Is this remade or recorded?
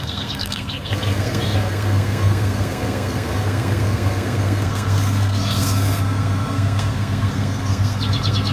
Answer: remade